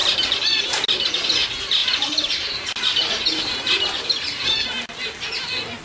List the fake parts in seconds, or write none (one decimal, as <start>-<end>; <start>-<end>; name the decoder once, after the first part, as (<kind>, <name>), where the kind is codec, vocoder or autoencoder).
none

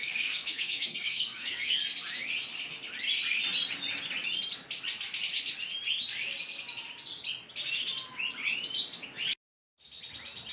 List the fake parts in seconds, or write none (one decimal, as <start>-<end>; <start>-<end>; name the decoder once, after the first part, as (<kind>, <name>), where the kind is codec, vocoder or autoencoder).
0.0-1.8 (codec, SNAC)

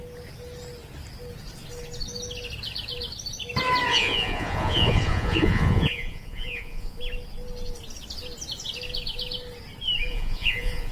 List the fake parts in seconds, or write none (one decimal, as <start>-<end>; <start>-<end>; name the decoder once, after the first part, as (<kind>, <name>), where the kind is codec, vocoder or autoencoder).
3.9-7.0 (vocoder, Vocos); 10.1-10.9

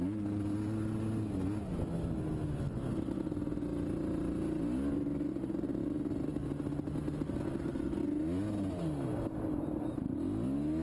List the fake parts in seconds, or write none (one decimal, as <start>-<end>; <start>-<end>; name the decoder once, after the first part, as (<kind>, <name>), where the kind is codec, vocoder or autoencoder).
none